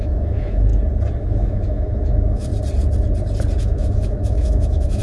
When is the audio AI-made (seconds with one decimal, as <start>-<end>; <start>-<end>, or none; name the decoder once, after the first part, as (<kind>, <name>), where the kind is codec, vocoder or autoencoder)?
0.0-0.7 (autoencoder, DAC-VAE); 1.2-2.5; 3.6-5.0